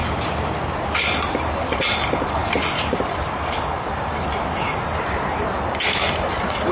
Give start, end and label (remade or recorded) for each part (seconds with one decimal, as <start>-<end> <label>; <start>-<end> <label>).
0.0-1.3 recorded; 1.3-6.7 remade

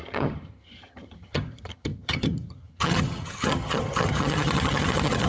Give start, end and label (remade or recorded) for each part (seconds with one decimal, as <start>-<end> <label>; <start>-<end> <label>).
0.0-5.3 remade

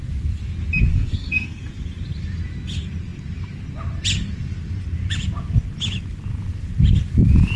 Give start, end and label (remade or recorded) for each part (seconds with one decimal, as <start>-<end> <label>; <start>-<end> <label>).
0.0-0.9 recorded; 0.9-1.6 remade; 1.6-7.6 recorded

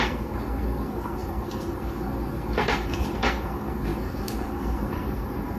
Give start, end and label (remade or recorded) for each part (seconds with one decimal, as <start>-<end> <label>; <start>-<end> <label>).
0.0-5.6 remade